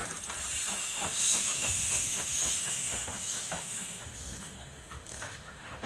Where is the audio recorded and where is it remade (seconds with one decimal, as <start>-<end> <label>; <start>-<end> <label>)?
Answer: 0.0-0.8 recorded; 0.8-5.9 remade